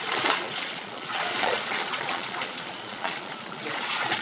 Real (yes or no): no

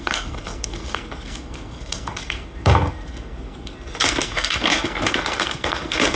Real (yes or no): no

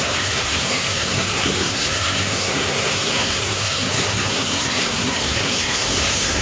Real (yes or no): no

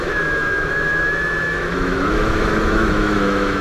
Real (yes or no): no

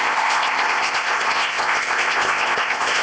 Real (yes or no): no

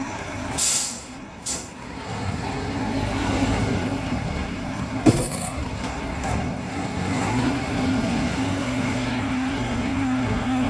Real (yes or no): no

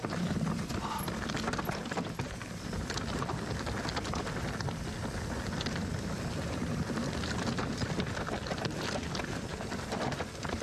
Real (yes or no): yes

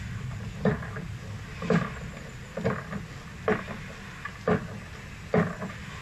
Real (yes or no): yes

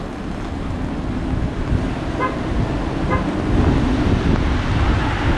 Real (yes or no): yes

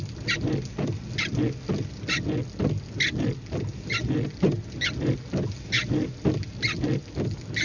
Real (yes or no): yes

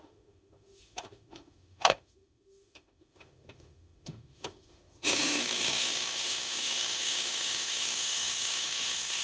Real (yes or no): no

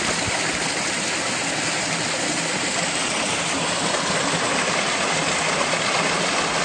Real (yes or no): yes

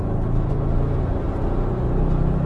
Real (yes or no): yes